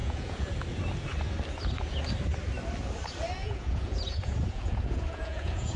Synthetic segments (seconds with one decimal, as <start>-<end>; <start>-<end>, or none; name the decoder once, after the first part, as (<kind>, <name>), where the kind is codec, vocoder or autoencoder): 0.0-0.5 (vocoder, Vocos); 3.4-5.8